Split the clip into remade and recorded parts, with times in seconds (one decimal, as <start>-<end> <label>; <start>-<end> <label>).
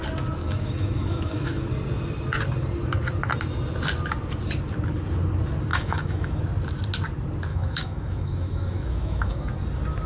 0.0-0.4 recorded; 0.4-1.6 remade; 1.6-5.7 recorded; 5.7-6.4 remade; 6.4-7.5 recorded; 7.5-9.5 remade; 9.5-10.1 recorded